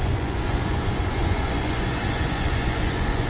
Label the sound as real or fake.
fake